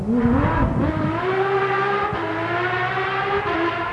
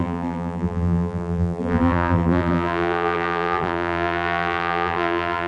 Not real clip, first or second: second